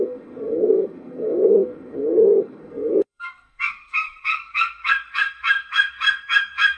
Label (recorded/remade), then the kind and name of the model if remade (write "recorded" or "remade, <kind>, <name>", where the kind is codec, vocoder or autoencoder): remade, codec, SNAC